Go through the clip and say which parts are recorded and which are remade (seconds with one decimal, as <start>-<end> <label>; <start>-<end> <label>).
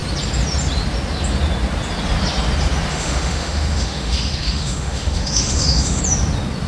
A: 0.0-2.9 recorded; 2.9-6.0 remade; 6.0-6.7 recorded